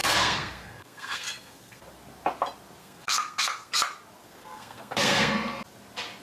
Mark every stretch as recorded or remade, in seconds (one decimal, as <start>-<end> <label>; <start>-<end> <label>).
0.0-1.8 remade; 1.8-2.8 recorded; 2.8-3.7 remade; 3.7-4.2 recorded; 4.2-5.3 remade; 5.3-6.2 recorded